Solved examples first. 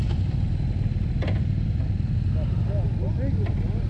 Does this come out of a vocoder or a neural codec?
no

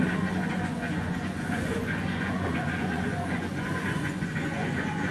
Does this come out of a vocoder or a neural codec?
yes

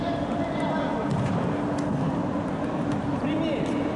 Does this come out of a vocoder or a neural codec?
no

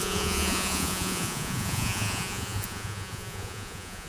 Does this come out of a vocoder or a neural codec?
yes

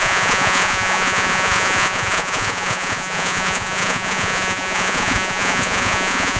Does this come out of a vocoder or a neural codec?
yes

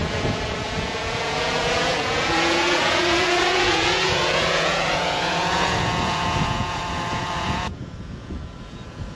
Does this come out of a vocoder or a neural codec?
yes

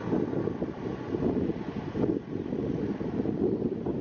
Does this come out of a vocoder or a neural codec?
no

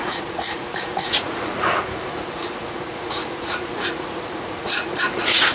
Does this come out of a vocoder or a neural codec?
yes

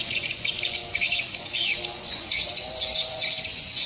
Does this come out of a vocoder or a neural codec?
yes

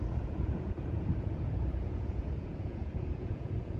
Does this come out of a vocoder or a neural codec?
yes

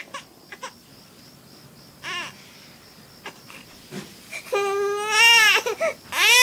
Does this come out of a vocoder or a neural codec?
no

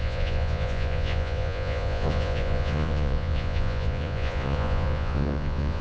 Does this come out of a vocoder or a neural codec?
yes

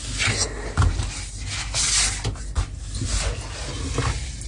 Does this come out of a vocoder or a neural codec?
no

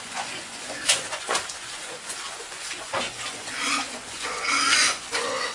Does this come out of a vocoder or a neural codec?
yes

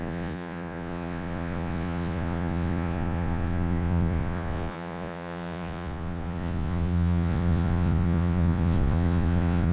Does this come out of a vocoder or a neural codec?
yes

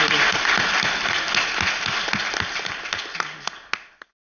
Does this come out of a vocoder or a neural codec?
no